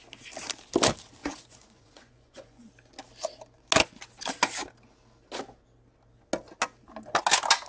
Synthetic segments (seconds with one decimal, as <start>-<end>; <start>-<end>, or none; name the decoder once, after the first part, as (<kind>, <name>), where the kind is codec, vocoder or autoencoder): 1.2-2.7 (vocoder, Vocos)